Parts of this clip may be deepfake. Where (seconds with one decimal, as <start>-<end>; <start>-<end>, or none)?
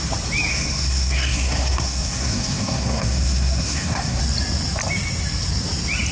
0.5-4.2